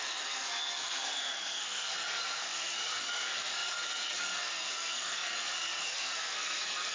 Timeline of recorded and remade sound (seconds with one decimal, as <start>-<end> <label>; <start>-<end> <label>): 0.0-6.9 remade